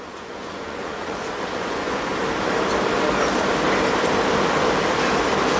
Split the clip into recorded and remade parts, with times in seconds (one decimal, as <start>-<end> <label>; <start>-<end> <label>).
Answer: 0.0-2.1 remade; 2.1-5.6 recorded